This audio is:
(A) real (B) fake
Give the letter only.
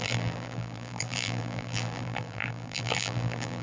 B